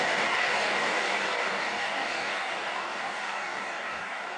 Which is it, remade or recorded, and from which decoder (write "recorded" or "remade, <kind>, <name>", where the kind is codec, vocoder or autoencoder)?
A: remade, codec, DAC